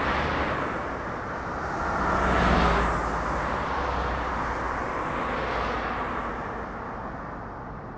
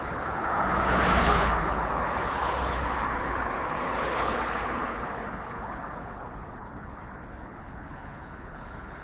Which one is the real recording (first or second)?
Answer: first